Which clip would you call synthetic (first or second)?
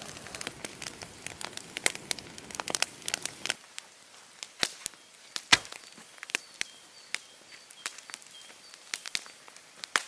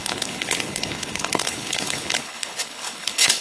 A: second